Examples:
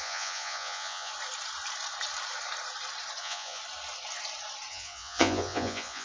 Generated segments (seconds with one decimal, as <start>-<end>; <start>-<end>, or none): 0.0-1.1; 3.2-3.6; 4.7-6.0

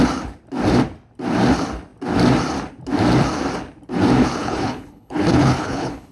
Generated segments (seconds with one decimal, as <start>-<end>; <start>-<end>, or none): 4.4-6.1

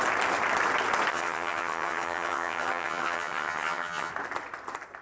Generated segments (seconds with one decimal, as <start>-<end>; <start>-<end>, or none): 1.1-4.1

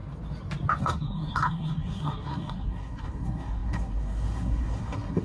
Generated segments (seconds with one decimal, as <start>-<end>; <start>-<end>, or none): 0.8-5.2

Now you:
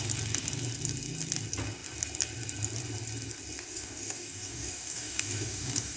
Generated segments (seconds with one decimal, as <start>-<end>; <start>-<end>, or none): 3.7-6.0

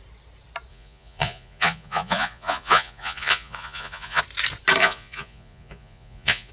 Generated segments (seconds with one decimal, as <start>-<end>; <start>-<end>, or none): 0.7-4.2; 4.8-6.5

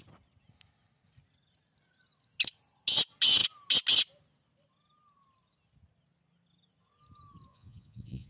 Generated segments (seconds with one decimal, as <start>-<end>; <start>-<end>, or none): 7.5-8.3

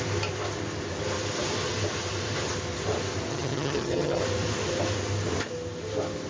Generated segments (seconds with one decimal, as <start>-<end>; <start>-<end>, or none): 3.3-4.2